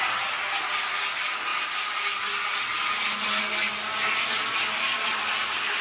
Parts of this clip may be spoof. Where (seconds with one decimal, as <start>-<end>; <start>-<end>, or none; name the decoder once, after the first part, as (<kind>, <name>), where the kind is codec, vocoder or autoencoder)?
none